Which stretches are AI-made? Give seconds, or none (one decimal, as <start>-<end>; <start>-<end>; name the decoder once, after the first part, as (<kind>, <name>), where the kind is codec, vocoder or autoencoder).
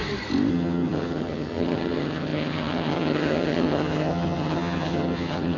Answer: 0.5-5.6 (vocoder, HiFi-GAN)